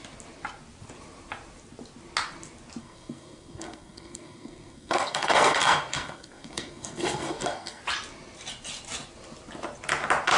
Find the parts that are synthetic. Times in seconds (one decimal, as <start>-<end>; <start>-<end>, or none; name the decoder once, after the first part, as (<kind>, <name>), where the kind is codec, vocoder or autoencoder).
2.8-7.8 (codec, SNAC)